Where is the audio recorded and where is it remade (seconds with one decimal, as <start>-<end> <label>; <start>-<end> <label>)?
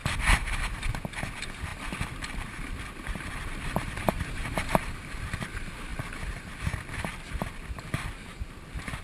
0.0-0.6 remade; 0.6-1.7 recorded; 1.7-5.5 remade; 5.5-9.0 recorded